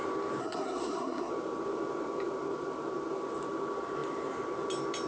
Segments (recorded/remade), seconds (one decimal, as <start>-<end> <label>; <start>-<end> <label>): 0.0-0.4 recorded; 0.4-1.3 remade; 1.3-5.1 recorded